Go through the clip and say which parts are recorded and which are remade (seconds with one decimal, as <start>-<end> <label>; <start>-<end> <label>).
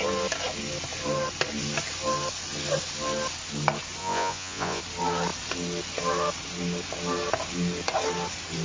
0.0-4.0 recorded; 4.0-4.8 remade; 4.8-8.6 recorded